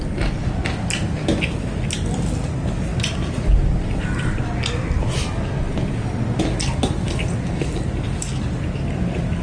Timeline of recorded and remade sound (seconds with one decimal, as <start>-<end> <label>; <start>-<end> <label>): 0.0-9.4 recorded